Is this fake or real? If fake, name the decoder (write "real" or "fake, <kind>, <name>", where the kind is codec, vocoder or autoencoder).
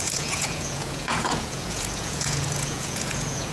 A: fake, vocoder, Vocos